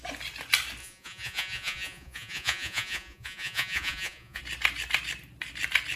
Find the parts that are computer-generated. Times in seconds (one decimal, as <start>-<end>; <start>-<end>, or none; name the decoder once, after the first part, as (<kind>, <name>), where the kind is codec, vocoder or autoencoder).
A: 0.8-4.4 (vocoder, Vocos)